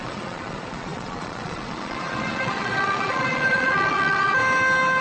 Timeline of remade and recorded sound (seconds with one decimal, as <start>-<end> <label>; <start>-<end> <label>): 0.0-4.4 remade; 4.4-5.0 recorded